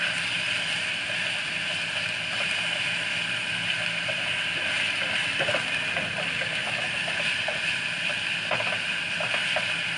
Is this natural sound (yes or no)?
yes